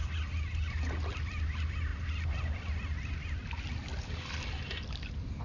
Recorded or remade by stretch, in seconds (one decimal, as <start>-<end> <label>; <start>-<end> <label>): 0.0-5.4 recorded